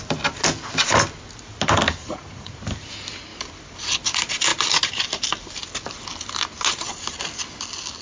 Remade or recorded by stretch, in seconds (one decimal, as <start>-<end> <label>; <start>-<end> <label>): 0.0-2.0 recorded; 2.0-2.6 remade; 2.6-8.0 recorded